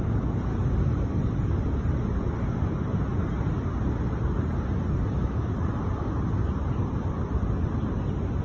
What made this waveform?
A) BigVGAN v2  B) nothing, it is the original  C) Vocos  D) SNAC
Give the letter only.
B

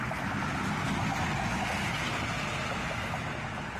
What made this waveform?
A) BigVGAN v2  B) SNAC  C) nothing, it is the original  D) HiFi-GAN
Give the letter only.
C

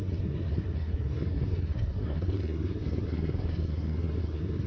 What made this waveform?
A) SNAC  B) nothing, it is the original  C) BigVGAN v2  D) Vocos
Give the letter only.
A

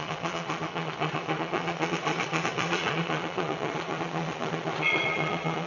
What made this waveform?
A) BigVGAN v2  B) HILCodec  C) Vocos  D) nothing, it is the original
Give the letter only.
C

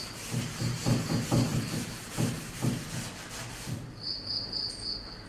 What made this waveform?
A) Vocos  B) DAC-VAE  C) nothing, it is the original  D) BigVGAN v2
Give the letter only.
D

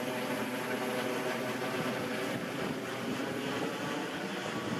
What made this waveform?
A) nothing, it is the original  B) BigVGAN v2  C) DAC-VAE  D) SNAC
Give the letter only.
A